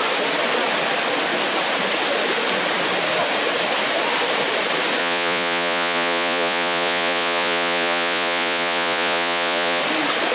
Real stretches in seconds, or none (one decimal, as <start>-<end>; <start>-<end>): 0.0-5.0; 9.8-10.3